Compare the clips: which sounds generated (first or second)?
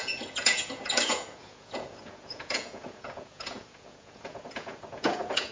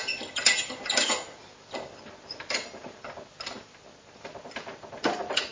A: first